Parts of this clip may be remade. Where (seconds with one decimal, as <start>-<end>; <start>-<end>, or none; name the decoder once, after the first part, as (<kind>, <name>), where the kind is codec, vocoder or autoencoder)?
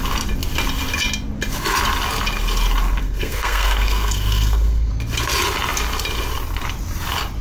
3.0-4.9 (codec, SNAC)